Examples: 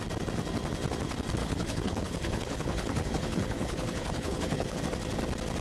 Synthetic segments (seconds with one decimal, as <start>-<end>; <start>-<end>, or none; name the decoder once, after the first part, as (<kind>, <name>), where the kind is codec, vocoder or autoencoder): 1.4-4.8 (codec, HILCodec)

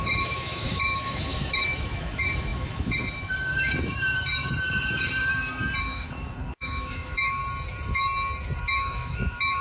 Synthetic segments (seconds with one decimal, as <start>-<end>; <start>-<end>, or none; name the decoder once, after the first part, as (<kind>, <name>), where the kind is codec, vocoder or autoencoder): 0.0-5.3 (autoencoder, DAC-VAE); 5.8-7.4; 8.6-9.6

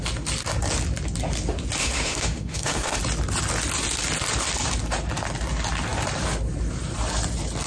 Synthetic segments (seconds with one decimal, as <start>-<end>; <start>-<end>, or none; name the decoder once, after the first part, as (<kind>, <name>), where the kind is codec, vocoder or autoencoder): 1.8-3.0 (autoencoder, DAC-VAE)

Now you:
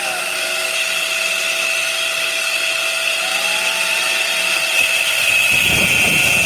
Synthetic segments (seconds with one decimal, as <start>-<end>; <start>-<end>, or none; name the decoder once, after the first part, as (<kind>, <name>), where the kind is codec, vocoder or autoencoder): 3.3-6.5 (vocoder, BigVGAN v2)

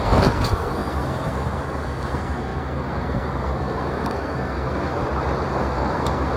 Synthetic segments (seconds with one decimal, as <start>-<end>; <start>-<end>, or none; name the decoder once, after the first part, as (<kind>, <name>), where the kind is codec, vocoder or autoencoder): 0.0-5.0 (codec, SNAC); 5.5-6.4